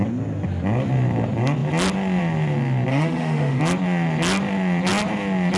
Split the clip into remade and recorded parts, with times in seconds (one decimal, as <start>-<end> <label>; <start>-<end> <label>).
0.0-2.9 recorded; 2.9-3.6 remade; 3.6-5.6 recorded